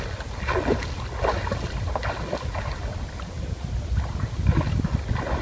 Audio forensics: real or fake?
real